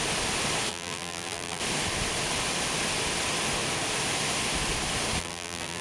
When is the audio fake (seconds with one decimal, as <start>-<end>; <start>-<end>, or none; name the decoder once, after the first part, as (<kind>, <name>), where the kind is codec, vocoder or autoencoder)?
0.7-1.6 (vocoder, BigVGAN v2); 5.2-5.8